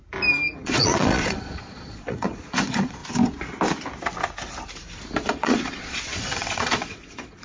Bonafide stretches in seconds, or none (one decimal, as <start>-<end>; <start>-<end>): 0.0-0.5; 3.0-5.3